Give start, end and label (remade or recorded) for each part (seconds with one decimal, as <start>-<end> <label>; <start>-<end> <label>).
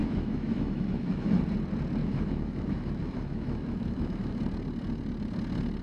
0.0-1.4 remade; 1.4-2.0 recorded; 2.0-4.4 remade; 4.4-5.8 recorded